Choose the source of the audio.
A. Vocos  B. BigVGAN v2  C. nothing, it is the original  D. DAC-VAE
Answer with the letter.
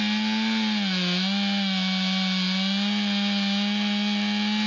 C